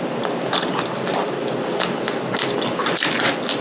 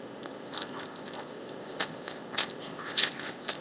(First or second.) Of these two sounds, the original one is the first